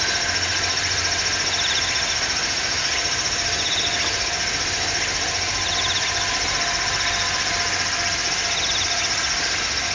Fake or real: real